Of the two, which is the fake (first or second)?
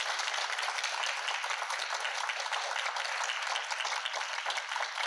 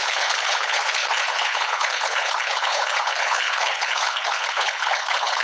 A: second